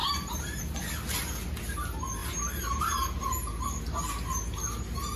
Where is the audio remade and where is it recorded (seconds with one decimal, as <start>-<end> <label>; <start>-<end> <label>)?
0.0-5.2 recorded